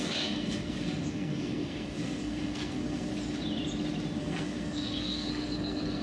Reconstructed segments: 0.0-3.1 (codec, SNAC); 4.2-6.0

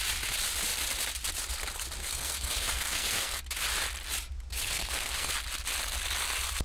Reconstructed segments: 2.0-3.4 (codec, SNAC); 4.5-5.3

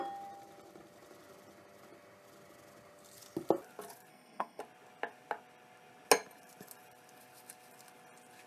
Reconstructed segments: 4.1-4.6 (codec, SNAC)

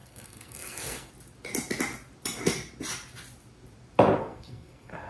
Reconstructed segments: 0.0-1.1 (codec, SNAC); 4.2-5.1

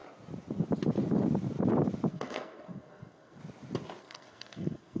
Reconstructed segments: 2.1-3.4 (codec, SNAC); 4.0-5.0